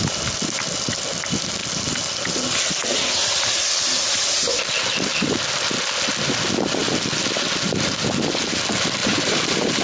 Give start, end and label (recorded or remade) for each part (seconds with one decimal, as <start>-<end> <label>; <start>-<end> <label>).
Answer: 0.0-9.0 recorded; 9.0-9.8 remade